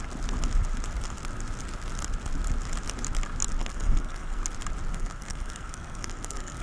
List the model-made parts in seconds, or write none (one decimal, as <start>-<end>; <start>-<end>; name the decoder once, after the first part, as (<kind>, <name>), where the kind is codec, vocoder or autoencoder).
3.6-4.4 (codec, SNAC); 4.9-6.6